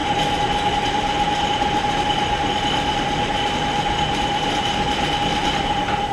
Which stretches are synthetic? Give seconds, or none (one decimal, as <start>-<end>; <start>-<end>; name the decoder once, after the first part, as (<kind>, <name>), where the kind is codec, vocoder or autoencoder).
0.9-6.1 (vocoder, BigVGAN v2)